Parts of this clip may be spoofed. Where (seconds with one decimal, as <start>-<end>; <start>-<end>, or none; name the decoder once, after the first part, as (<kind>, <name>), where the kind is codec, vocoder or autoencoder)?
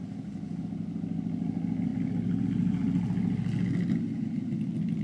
none